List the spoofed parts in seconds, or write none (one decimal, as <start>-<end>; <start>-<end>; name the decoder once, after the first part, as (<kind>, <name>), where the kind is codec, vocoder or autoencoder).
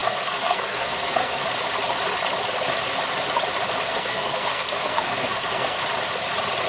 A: 0.0-1.4 (codec, SNAC); 3.9-5.8